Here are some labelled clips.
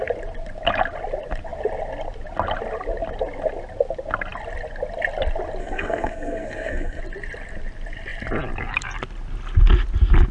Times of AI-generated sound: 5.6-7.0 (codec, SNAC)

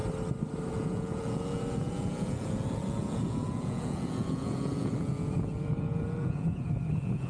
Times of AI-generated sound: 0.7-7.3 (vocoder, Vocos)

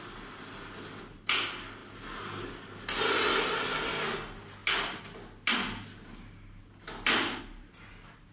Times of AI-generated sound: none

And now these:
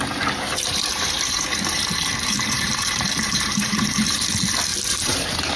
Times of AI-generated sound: 0.9-4.3 (vocoder, BigVGAN v2); 4.7-5.6

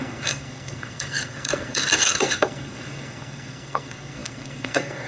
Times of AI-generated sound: 0.0-5.1 (codec, SNAC)

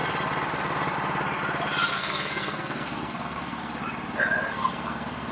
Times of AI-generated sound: 1.9-3.8 (codec, SNAC); 4.5-5.3

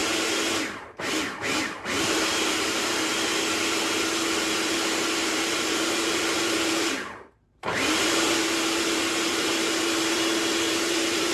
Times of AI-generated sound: 1.6-3.3 (vocoder, BigVGAN v2); 4.4-11.3

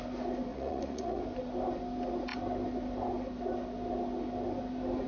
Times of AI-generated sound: 0.5-1.2 (vocoder, Vocos)